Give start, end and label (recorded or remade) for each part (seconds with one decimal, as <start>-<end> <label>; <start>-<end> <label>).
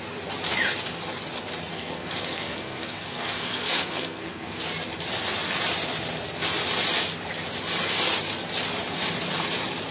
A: 0.0-1.7 recorded; 1.7-4.6 remade; 4.6-9.9 recorded